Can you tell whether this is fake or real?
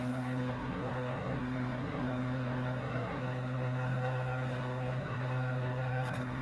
fake